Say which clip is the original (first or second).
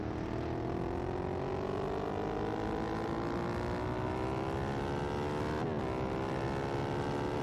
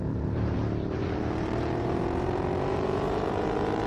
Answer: first